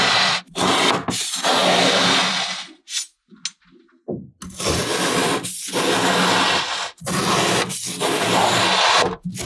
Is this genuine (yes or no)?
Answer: yes